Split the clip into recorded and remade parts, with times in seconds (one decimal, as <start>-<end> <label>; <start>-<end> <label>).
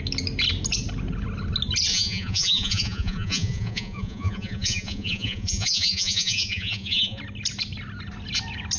0.0-1.9 recorded; 1.9-7.2 remade; 7.2-8.8 recorded